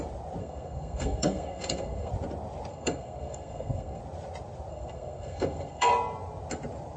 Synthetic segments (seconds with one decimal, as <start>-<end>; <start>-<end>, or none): 0.4-2.1; 2.7-4.0; 4.7-5.9

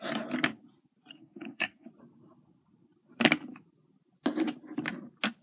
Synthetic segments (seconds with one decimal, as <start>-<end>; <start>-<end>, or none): 1.1-1.9

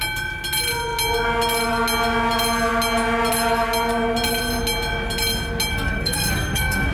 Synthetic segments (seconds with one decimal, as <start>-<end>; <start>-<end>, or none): 5.7-6.9

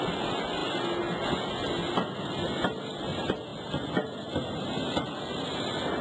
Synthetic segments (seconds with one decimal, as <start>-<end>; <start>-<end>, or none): none

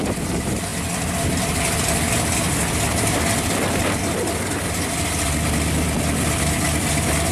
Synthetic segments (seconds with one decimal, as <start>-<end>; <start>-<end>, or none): none

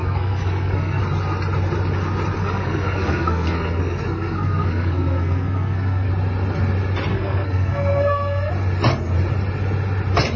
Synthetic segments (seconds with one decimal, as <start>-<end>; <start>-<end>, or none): 0.0-1.0; 2.4-6.1; 7.1-8.5

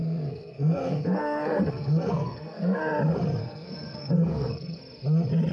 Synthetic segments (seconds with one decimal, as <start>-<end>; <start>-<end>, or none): 0.0-2.8; 3.4-4.8